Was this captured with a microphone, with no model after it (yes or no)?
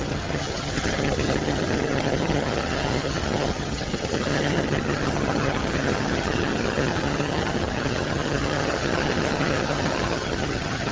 no